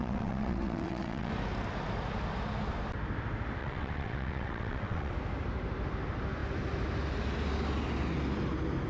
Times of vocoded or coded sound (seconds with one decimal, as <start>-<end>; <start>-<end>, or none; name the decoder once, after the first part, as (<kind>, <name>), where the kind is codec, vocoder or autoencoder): 0.0-1.3 (vocoder, WaveNeXt); 3.6-5.1